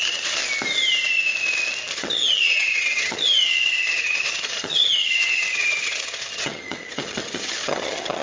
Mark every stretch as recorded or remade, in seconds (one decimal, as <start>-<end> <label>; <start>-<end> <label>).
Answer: 0.0-0.4 remade; 0.4-1.9 recorded; 1.9-8.2 remade